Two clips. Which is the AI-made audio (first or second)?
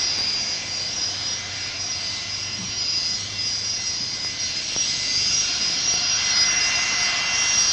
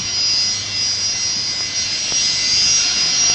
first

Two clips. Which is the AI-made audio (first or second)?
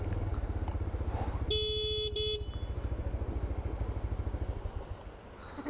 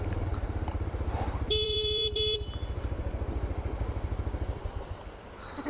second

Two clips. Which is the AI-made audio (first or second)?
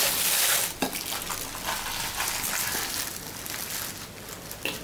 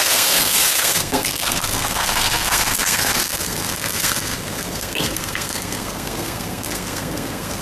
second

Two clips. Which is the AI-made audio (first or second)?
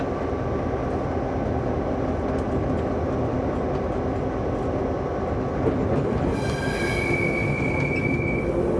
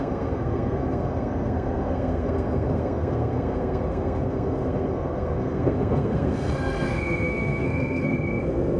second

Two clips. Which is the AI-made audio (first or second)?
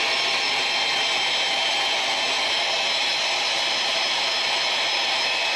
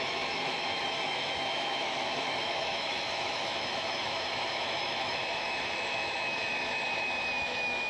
second